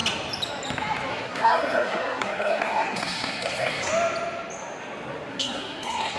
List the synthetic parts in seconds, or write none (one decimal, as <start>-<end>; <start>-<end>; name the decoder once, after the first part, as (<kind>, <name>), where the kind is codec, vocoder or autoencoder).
1.1-3.9 (codec, SNAC); 5.3-6.2